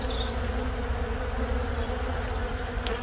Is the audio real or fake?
real